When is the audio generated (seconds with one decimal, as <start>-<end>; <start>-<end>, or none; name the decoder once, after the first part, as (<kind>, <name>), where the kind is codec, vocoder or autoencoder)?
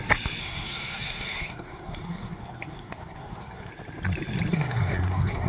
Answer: 0.4-3.7 (codec, SNAC); 4.5-5.5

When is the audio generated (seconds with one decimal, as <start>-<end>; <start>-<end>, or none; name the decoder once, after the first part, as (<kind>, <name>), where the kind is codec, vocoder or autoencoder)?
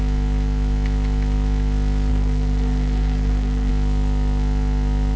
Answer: 2.1-3.7 (codec, SNAC)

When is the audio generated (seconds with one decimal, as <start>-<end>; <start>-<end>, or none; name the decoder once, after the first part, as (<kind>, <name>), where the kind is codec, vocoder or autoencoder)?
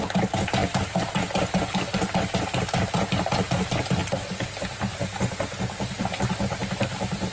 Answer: none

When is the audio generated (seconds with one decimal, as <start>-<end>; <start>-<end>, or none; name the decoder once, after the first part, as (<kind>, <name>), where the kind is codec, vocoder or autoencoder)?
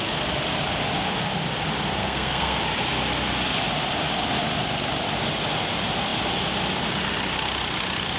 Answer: 2.0-2.6 (codec, SNAC)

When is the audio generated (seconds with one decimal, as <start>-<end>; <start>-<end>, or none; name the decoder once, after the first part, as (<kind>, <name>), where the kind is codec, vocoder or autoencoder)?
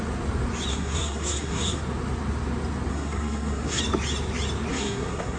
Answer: 0.7-1.8 (codec, SNAC); 2.9-3.8; 4.7-5.4